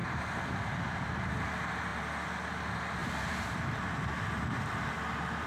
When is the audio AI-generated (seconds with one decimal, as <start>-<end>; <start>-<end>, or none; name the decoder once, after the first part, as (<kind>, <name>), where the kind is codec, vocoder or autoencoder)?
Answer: 0.0-1.0 (vocoder, BigVGAN v2); 3.0-3.5